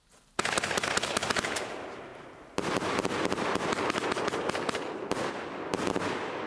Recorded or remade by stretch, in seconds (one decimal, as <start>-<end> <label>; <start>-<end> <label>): 0.0-6.5 recorded